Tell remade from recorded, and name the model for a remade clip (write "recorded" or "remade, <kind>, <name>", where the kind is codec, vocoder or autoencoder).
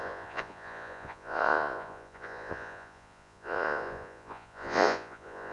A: remade, vocoder, Vocos